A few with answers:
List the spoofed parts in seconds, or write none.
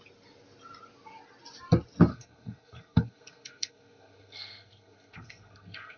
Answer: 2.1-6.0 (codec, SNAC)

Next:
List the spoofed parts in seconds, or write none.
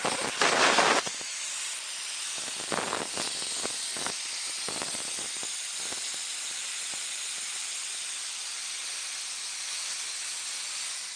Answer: none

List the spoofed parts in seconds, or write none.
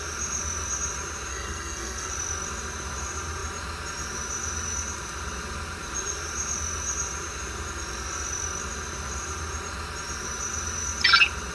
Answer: 1.3-2.1 (codec, SNAC)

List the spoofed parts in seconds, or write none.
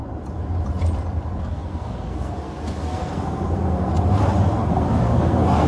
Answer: 1.4-3.9 (codec, SNAC); 4.5-5.7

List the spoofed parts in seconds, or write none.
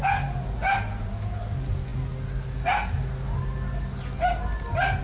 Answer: none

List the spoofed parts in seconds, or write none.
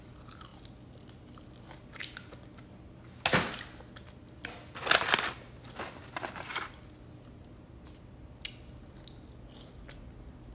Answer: none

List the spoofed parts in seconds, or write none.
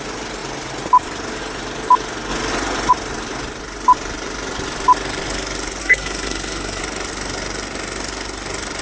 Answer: 5.8-6.8 (codec, SNAC)